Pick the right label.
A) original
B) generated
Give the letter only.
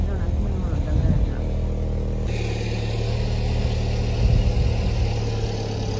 A